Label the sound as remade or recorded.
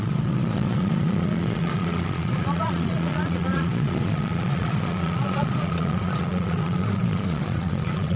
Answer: remade